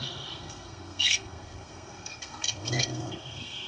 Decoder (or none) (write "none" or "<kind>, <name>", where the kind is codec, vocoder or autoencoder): codec, SNAC